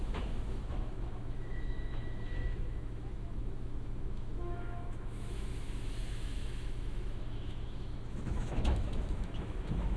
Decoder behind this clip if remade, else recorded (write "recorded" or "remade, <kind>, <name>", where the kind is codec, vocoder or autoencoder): remade, autoencoder, DAC-VAE